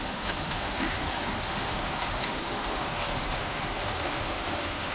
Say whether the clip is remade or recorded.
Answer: remade